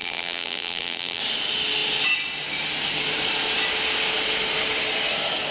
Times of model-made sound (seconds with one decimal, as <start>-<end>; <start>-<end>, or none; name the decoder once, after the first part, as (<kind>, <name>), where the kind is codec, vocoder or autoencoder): 0.0-1.2 (vocoder, BigVGAN v2)